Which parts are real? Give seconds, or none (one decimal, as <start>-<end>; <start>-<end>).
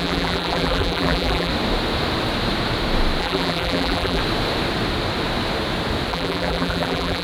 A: 1.5-3.2; 4.2-6.1